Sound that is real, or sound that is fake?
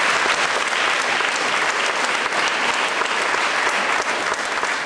real